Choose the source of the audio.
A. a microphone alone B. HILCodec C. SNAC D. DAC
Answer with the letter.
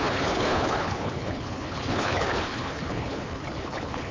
B